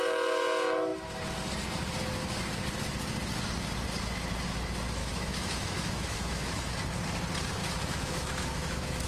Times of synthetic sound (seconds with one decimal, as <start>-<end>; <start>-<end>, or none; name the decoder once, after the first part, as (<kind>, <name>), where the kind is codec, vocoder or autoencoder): 5.0-6.6 (autoencoder, DAC-VAE); 7.6-9.1

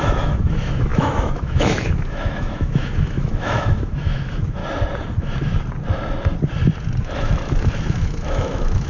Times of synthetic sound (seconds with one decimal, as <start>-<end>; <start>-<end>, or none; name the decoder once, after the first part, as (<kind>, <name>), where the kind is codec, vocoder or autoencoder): 0.0-4.6 (autoencoder, DAC-VAE); 7.0-8.9

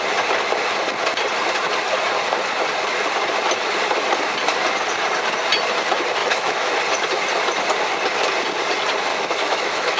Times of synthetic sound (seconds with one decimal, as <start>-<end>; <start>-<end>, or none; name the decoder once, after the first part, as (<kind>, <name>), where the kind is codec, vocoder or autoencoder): 6.2-6.8 (autoencoder, DAC-VAE); 9.1-10.0

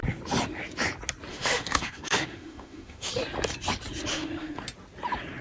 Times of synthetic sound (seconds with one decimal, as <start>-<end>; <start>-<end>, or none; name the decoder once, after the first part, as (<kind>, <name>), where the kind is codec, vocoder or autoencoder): 1.3-3.1 (autoencoder, DAC-VAE); 4.1-4.6